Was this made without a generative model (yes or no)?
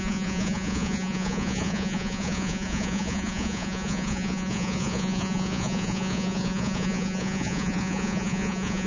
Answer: no